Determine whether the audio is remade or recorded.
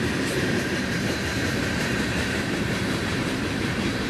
remade